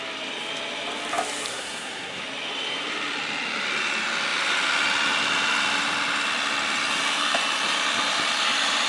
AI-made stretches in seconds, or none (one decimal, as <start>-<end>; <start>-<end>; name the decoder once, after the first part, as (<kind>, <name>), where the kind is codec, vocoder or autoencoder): 1.5-2.2 (codec, SNAC)